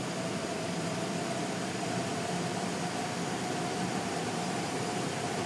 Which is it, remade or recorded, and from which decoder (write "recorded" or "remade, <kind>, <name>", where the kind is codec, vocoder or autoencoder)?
recorded